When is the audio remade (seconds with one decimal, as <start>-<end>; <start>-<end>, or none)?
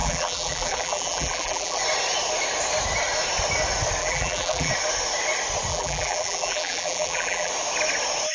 0.0-1.8; 4.0-4.7; 5.7-7.5